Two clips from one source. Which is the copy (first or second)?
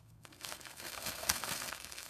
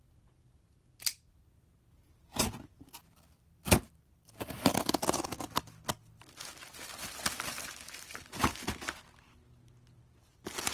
first